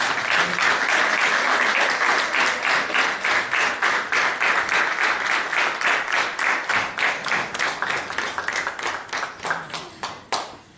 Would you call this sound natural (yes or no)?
yes